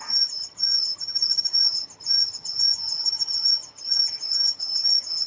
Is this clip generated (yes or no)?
yes